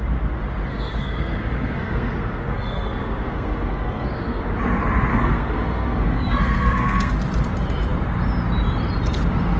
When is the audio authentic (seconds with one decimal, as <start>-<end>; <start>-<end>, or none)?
0.0-0.7; 4.4-5.1; 7.1-9.6